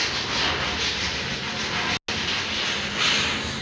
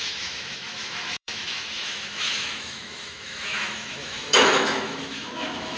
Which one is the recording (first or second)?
first